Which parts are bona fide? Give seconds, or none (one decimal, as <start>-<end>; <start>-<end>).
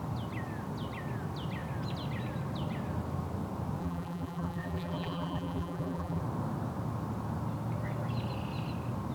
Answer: 0.0-3.8; 6.2-9.1